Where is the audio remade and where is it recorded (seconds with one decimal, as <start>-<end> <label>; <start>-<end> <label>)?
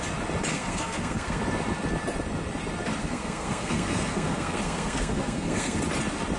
0.0-0.5 recorded; 0.5-1.4 remade; 1.4-3.0 recorded; 3.0-5.8 remade; 5.8-6.4 recorded